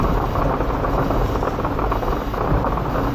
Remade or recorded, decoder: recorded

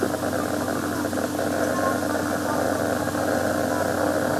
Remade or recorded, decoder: recorded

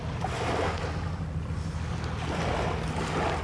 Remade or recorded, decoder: recorded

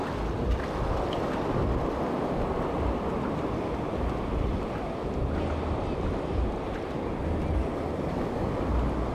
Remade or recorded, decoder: recorded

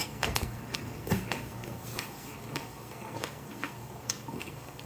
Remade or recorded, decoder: remade, codec, SNAC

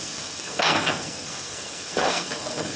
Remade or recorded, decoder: remade, codec, SNAC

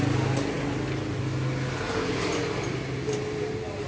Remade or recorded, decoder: recorded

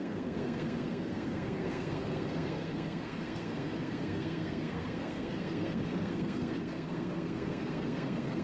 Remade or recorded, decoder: remade, codec, SNAC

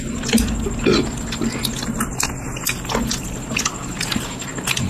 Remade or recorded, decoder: recorded